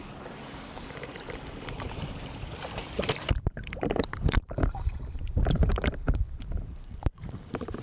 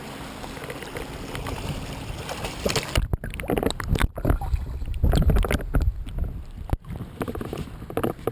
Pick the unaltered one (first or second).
second